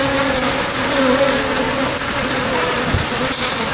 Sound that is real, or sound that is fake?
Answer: real